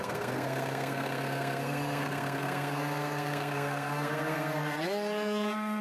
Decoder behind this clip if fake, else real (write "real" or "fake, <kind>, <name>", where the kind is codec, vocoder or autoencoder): fake, codec, SNAC